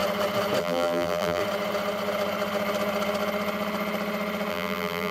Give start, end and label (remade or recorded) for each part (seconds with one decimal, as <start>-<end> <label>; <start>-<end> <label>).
0.0-0.6 recorded; 0.6-1.4 remade; 1.4-4.5 recorded; 4.5-5.1 remade